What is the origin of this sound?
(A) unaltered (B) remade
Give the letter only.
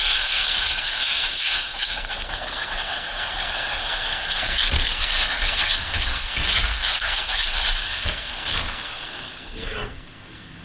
B